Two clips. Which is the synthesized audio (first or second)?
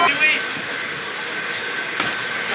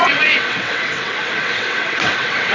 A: second